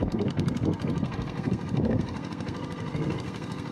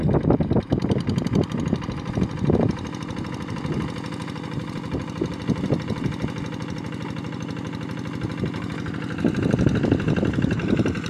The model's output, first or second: first